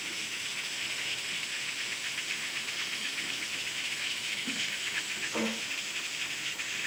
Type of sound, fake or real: fake